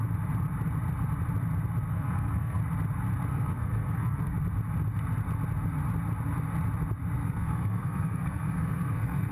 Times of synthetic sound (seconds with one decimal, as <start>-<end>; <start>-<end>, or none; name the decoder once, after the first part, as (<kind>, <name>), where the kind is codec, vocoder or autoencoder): 1.9-2.6 (codec, SNAC); 3.3-4.3; 7.2-9.3